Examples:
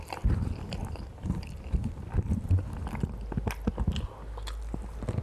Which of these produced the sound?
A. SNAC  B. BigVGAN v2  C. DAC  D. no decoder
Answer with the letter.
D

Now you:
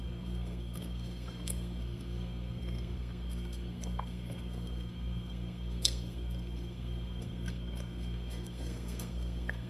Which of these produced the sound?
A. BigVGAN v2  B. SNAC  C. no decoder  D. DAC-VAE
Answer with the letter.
B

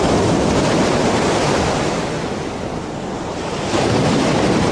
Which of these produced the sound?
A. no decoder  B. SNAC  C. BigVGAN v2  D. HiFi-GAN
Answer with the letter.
A